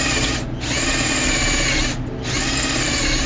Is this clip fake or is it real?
real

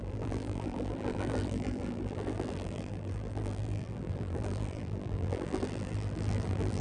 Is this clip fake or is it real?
fake